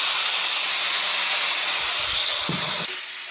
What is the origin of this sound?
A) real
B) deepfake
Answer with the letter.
A